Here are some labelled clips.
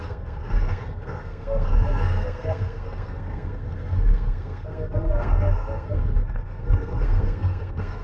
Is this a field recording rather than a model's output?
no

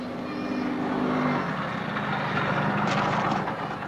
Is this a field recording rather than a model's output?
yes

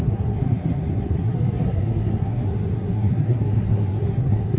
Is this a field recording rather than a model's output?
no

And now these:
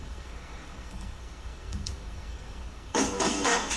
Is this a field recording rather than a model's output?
no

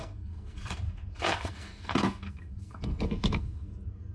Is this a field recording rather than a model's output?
no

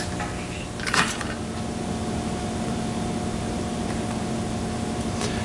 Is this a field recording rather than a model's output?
yes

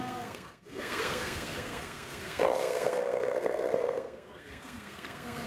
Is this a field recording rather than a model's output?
no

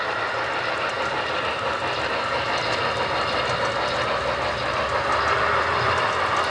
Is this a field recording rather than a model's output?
yes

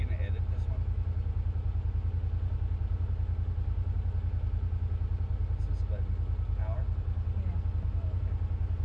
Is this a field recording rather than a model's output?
yes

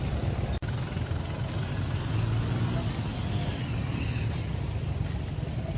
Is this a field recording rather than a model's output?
yes